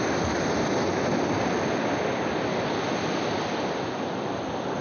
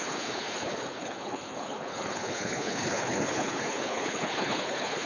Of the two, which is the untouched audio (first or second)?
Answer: first